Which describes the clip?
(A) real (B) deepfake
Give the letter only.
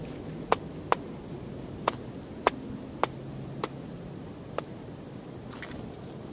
A